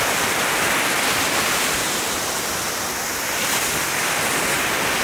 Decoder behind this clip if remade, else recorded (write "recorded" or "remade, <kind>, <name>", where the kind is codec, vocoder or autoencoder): recorded